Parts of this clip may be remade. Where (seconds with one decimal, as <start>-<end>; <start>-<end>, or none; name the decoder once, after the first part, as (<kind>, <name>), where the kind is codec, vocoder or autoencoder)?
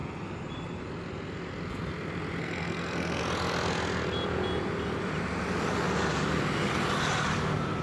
2.4-3.2 (codec, SNAC)